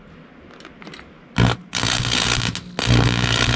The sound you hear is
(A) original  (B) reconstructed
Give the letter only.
A